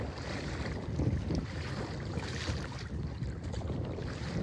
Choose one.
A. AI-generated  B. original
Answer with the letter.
B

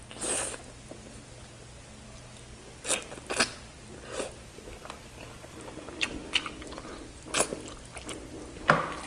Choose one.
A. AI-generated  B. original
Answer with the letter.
B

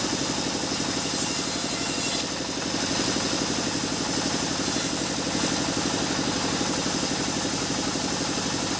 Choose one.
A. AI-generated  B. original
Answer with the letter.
B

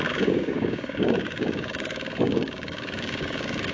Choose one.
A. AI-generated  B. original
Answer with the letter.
A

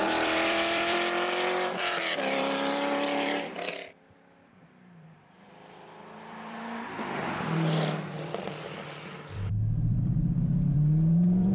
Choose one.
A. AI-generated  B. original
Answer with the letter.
A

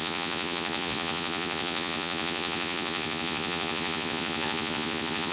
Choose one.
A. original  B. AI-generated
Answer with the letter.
B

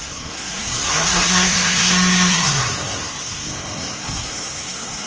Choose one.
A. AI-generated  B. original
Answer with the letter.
A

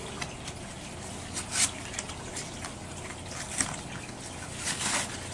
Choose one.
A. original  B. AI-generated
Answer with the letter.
A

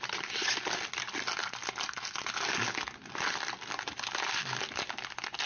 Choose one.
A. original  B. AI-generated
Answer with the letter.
A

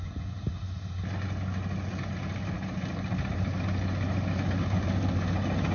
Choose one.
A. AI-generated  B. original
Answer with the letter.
B